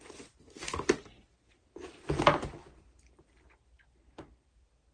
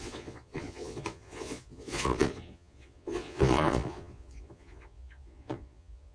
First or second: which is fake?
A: second